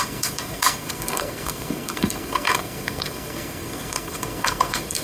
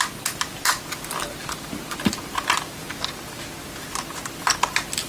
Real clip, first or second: second